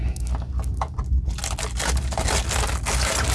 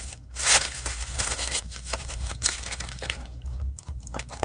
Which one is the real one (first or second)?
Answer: first